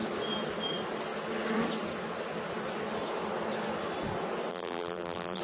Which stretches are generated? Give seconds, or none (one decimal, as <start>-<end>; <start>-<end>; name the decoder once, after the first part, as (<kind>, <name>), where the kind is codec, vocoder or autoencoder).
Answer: 4.5-5.4 (vocoder, BigVGAN v2)